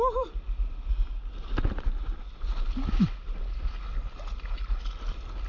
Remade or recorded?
recorded